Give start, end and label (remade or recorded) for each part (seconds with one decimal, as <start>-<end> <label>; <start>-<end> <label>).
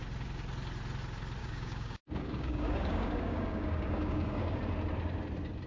0.0-1.4 recorded; 1.4-4.6 remade; 4.6-5.7 recorded